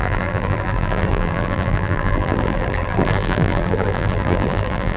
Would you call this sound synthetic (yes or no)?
yes